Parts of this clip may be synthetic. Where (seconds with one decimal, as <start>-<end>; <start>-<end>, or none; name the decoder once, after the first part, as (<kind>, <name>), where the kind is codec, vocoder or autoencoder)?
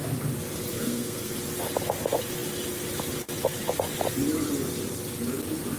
0.7-1.3 (codec, SNAC)